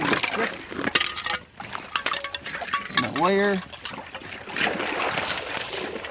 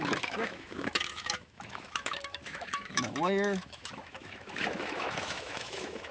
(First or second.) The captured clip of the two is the first